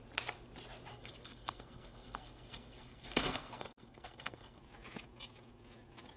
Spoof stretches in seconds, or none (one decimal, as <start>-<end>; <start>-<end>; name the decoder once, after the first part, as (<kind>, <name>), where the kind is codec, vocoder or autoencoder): 0.9-4.6 (codec, SNAC)